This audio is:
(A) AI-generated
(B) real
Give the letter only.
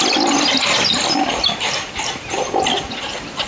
B